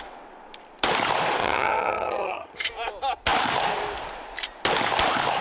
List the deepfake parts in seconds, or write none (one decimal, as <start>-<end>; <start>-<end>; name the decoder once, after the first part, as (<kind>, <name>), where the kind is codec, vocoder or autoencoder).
1.4-2.7 (vocoder, HiFi-GAN)